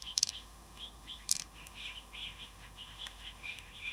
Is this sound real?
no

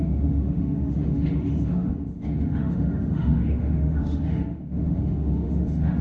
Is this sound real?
no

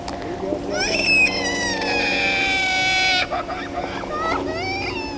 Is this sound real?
yes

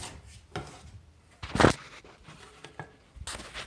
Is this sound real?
yes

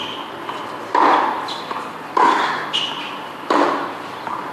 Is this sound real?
yes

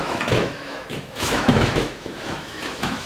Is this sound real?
no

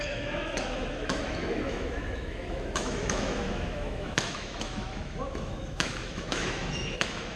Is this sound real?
no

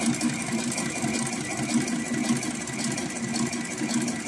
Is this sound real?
yes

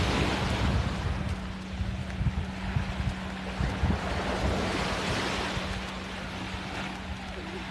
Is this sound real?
yes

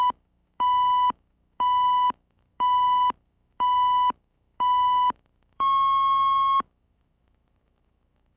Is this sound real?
no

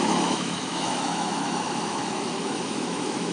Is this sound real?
no